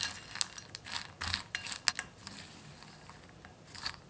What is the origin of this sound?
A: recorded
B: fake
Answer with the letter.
A